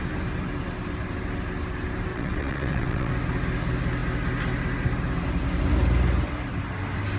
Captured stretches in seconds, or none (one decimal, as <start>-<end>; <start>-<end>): 0.0-2.1; 3.1-7.2

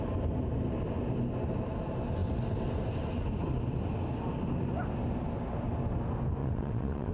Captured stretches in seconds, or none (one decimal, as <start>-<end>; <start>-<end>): 0.0-6.4

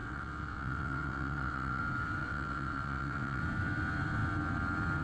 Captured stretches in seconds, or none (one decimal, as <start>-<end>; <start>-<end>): 1.8-2.2; 3.4-5.0

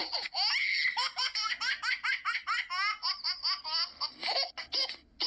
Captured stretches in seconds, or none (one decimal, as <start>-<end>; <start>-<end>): 0.0-5.3

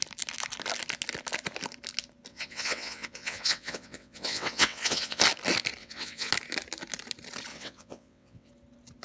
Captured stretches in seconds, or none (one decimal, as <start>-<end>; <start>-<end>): 0.0-2.3; 5.2-5.8; 6.3-7.5; 8.5-9.0

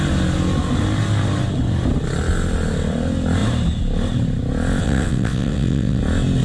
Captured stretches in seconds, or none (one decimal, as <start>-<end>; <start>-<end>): 0.0-4.8; 6.0-6.4

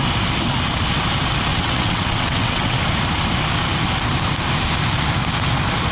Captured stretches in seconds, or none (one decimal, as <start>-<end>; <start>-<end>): 0.0-1.5; 2.8-5.9